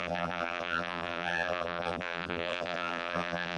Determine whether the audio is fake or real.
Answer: fake